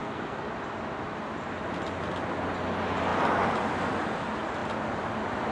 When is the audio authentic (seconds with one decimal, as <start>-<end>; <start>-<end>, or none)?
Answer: 0.5-5.5